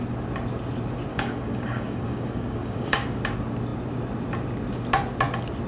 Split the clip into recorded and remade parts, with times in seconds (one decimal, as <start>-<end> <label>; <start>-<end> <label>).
0.0-1.1 recorded; 1.1-3.2 remade; 3.2-5.7 recorded